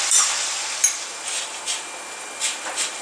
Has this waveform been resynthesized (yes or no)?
yes